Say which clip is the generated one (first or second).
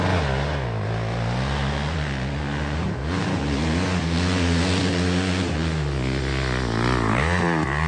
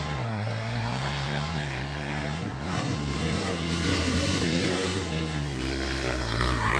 second